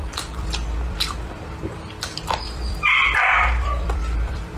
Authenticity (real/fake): fake